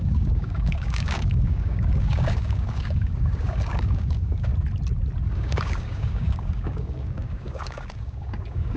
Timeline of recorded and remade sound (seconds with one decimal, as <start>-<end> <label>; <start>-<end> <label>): 0.0-4.5 remade; 4.5-5.3 recorded; 5.3-8.8 remade

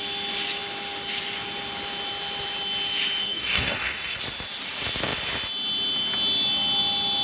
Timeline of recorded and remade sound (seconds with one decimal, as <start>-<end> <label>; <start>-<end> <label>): 0.0-3.2 recorded; 3.2-4.2 remade; 4.2-7.2 recorded

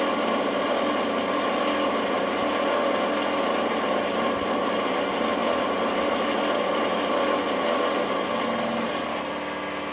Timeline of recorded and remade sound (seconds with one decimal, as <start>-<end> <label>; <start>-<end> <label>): 0.0-9.9 recorded

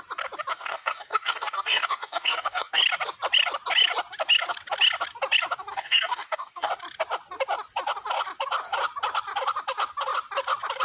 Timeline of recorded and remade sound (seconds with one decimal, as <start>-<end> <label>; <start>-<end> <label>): 0.0-0.5 recorded; 0.5-2.8 remade; 2.8-5.7 recorded; 5.7-6.7 remade; 6.7-10.8 recorded

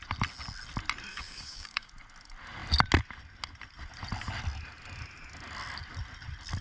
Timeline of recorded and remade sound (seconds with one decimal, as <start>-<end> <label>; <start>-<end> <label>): 0.0-1.1 recorded; 1.1-1.9 remade; 1.9-6.6 recorded

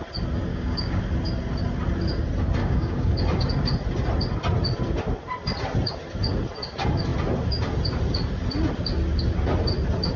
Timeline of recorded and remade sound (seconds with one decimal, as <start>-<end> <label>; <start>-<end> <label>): 0.0-0.5 recorded; 0.5-1.0 remade; 1.0-2.6 recorded; 2.6-3.1 remade; 3.1-10.2 recorded

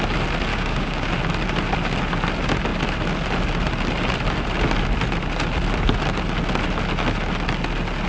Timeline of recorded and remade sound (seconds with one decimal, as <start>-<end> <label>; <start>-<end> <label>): 0.0-0.5 recorded; 0.5-1.1 remade; 1.1-8.1 recorded

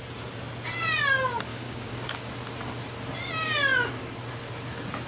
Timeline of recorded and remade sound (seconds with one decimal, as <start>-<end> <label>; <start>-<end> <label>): 0.0-1.5 recorded; 1.5-2.3 remade; 2.3-5.1 recorded